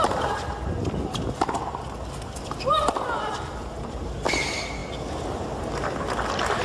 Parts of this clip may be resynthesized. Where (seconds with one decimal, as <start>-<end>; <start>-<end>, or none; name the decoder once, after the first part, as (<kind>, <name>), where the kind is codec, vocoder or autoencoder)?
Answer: none

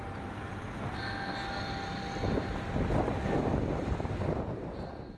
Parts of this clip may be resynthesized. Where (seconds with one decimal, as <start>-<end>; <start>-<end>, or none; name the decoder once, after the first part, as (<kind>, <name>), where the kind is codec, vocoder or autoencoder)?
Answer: none

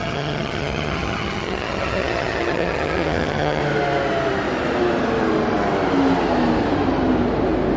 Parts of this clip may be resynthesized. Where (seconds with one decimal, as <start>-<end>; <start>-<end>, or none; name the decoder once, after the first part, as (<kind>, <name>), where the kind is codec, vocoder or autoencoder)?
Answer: 0.0-3.6 (vocoder, HiFi-GAN)

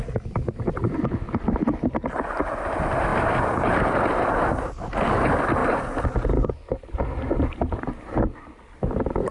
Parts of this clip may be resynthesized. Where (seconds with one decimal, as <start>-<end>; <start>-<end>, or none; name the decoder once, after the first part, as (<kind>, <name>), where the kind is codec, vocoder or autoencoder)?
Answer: 3.1-4.0 (vocoder, BigVGAN v2)